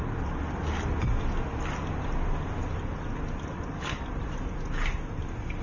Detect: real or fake real